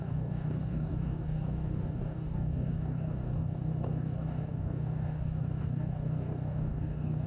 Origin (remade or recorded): remade